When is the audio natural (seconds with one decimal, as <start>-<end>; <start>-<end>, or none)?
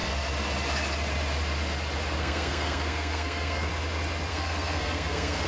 0.0-2.2; 3.7-4.3